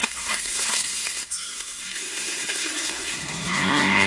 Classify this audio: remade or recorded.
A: remade